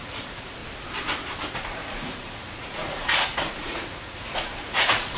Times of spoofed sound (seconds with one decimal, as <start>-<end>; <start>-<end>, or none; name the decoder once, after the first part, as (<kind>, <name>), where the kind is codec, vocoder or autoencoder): 0.0-0.6 (vocoder, Vocos); 1.5-5.2